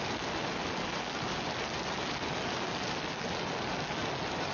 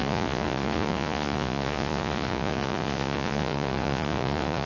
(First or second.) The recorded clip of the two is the first